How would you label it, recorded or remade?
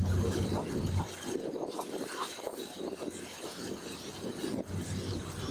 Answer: recorded